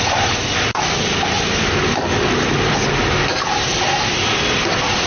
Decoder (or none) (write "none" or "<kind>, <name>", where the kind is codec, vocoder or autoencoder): vocoder, BigVGAN v2